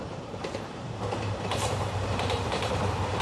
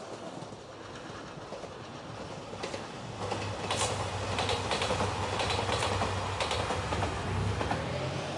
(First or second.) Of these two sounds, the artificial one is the first